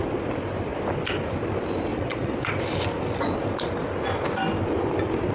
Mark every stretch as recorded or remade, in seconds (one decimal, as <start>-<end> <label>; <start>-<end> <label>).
0.0-1.9 recorded; 1.9-2.5 remade; 2.5-5.3 recorded